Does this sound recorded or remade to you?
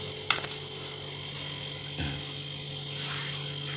recorded